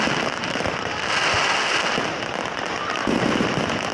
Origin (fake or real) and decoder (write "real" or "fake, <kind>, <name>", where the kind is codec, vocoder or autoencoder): real